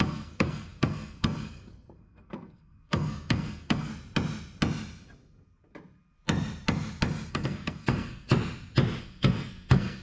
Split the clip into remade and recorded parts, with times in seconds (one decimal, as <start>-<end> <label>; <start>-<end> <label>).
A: 0.0-3.9 remade; 3.9-7.3 recorded; 7.3-8.3 remade; 8.3-9.0 recorded; 9.0-10.0 remade

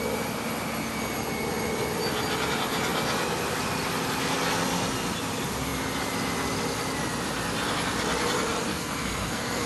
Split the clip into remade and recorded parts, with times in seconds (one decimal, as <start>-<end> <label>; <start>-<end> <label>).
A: 0.0-8.7 recorded; 8.7-9.7 remade